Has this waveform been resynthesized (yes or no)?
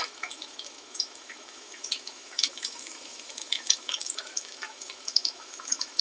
yes